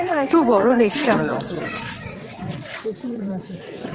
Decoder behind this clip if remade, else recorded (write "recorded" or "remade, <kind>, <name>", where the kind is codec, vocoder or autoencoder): remade, vocoder, WaveNeXt